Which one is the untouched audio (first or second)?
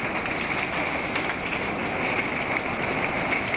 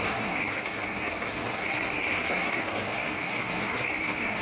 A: first